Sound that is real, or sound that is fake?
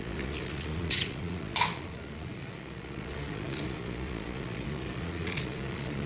fake